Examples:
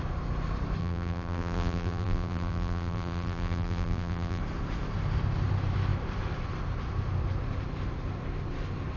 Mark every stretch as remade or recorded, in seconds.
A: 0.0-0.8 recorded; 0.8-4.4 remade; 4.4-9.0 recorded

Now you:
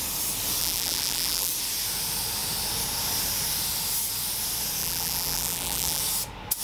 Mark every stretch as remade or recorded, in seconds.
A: 0.0-0.6 recorded; 0.6-1.5 remade; 1.5-4.8 recorded; 4.8-6.0 remade; 6.0-6.6 recorded

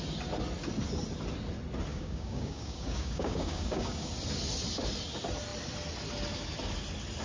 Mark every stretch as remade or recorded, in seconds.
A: 0.0-1.9 recorded; 1.9-4.1 remade; 4.1-7.2 recorded

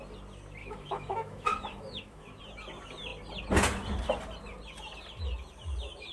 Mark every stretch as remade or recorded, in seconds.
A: 0.0-0.6 recorded; 0.6-2.4 remade; 2.4-6.1 recorded

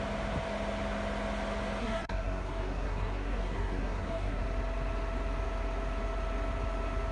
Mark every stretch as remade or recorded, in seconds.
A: 0.0-1.8 recorded; 1.8-4.4 remade; 4.4-7.1 recorded

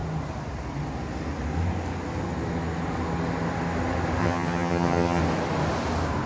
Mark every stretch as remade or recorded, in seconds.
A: 0.0-4.2 recorded; 4.2-5.2 remade; 5.2-6.3 recorded

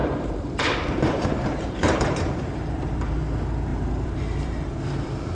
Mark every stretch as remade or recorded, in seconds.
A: 0.0-3.2 remade; 3.2-3.7 recorded; 3.7-4.8 remade; 4.8-5.3 recorded